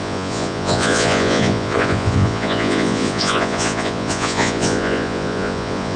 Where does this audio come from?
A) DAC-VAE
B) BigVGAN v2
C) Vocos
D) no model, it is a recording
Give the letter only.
C